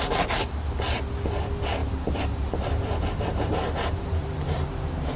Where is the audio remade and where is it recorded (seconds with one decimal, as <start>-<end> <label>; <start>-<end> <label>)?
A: 0.0-1.8 recorded; 1.8-5.2 remade